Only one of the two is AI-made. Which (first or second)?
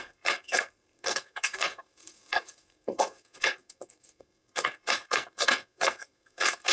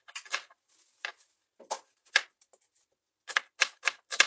first